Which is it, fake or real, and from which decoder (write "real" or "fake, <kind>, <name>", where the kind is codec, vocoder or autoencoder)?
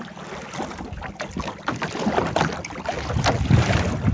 real